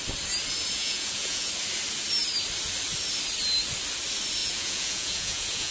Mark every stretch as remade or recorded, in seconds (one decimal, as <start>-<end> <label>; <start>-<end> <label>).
0.0-0.8 recorded; 0.8-1.5 remade; 1.5-4.4 recorded; 4.4-5.7 remade